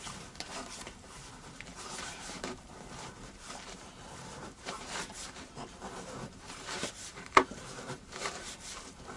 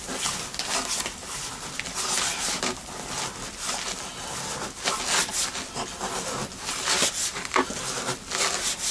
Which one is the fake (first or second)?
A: first